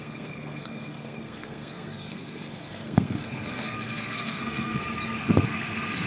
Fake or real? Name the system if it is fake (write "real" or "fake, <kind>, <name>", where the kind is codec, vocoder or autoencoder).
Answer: fake, codec, SNAC